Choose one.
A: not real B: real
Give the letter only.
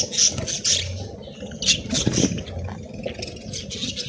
B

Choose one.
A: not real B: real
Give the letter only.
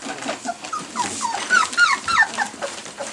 B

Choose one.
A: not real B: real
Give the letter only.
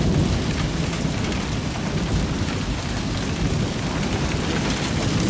B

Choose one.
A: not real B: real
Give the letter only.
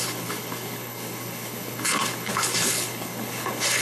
A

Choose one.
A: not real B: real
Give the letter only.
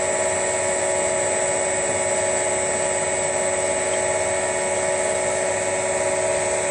B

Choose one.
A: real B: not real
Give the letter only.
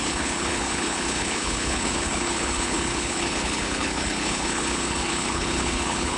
B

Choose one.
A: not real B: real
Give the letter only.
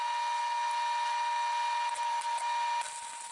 B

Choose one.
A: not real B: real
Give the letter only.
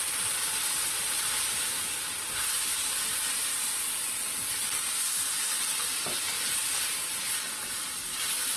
B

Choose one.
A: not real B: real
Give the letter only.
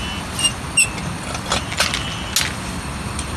B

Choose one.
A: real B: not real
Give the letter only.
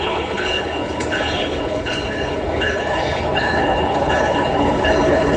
B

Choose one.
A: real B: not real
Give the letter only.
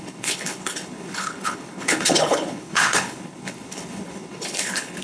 B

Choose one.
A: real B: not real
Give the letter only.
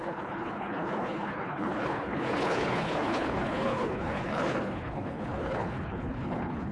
B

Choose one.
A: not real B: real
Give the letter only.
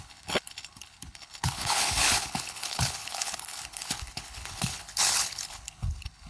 A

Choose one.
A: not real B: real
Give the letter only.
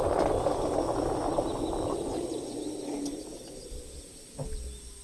B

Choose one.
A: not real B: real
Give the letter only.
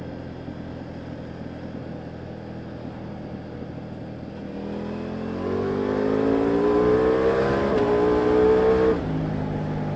B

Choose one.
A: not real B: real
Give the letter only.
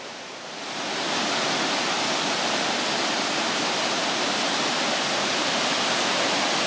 B